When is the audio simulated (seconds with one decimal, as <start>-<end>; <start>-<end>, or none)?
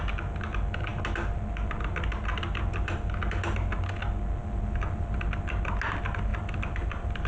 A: 4.4-5.3; 6.3-7.3